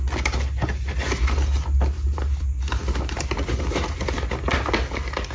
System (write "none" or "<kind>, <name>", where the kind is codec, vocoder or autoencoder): none